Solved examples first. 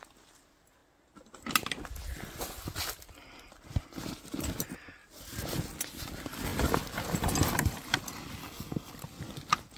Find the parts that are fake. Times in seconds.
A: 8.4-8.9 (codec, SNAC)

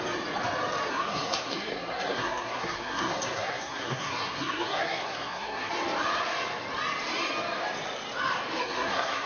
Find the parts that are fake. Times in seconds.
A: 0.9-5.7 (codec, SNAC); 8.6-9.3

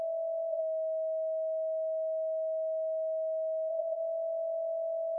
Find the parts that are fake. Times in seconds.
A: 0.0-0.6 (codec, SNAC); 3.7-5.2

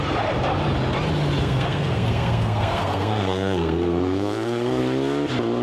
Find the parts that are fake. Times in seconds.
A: 1.4-4.8 (codec, SNAC)

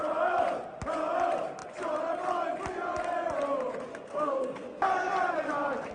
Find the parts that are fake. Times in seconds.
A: 3.9-4.8 (codec, SNAC)